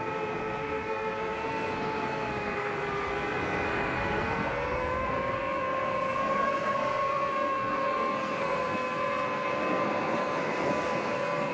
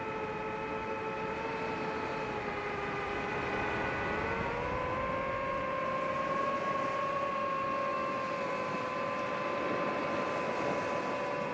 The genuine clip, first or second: second